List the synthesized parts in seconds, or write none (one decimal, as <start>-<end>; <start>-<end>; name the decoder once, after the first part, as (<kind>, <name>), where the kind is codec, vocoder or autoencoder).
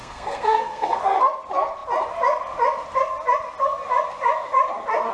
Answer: 0.0-1.0 (codec, SNAC)